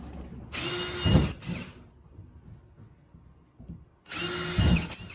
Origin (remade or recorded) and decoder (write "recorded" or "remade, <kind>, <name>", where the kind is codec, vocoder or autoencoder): recorded